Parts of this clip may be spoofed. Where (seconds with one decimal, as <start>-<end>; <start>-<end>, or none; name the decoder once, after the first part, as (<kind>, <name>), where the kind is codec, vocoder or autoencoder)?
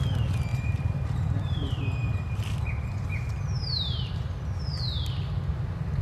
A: 0.5-4.1 (vocoder, BigVGAN v2)